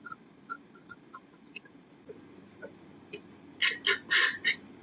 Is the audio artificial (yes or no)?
no